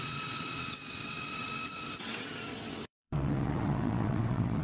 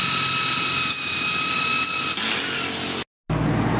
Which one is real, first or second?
second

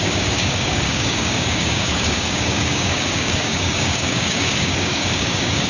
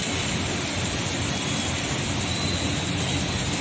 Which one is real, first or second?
second